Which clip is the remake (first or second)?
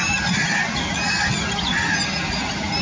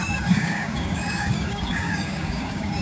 second